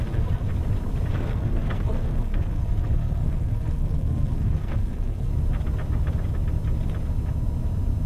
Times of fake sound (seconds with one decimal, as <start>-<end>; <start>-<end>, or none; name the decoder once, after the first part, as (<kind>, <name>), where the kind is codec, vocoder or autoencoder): 0.0-0.5 (codec, SNAC); 1.1-5.3